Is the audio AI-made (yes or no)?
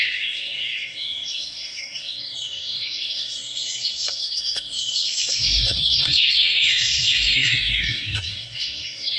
yes